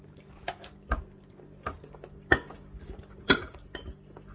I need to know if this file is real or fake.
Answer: real